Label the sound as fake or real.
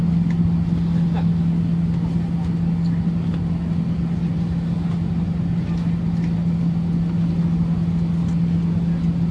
real